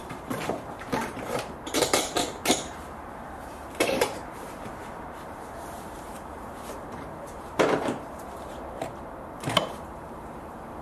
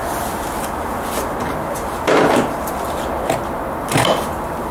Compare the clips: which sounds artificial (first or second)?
first